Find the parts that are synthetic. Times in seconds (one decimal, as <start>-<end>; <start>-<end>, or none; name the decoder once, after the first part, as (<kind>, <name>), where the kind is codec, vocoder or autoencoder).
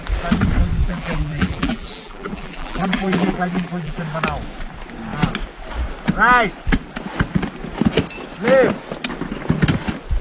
0.8-4.0 (vocoder, BigVGAN v2)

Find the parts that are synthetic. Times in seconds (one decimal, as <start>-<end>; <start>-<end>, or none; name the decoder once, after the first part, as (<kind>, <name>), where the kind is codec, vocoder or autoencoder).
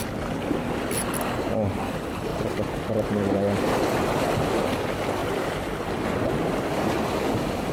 5.2-5.9 (vocoder, BigVGAN v2)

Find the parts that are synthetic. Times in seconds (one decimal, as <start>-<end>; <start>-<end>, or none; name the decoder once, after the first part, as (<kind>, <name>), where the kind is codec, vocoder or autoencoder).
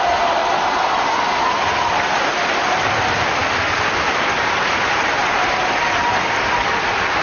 0.0-0.4 (vocoder, BigVGAN v2); 1.7-5.2; 5.8-7.2